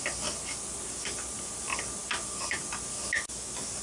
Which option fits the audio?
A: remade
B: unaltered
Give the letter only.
B